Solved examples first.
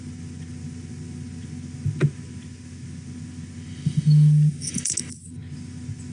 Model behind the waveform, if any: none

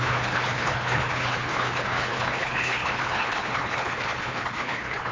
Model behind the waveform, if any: codec, HILCodec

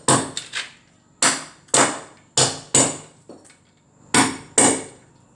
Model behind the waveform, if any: none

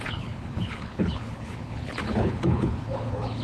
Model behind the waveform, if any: codec, HILCodec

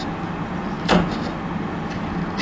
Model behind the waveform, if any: none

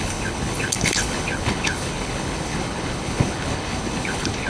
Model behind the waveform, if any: codec, HILCodec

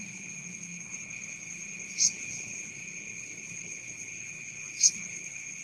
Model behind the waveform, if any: codec, HILCodec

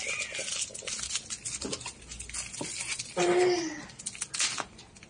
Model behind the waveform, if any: none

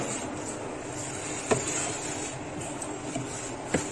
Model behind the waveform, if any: none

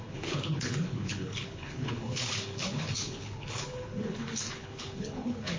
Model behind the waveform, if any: codec, HILCodec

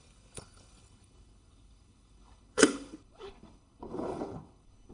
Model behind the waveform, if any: codec, HILCodec